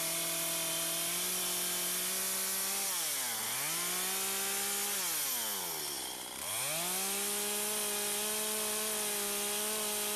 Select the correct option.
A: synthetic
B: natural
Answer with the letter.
B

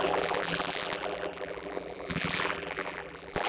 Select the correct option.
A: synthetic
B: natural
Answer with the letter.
A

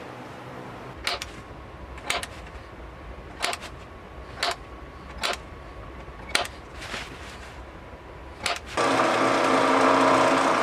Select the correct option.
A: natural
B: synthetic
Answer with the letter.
A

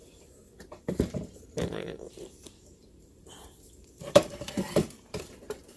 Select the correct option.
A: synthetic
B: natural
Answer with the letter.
A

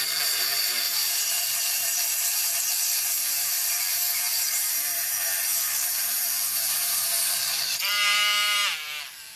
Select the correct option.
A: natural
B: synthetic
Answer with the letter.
B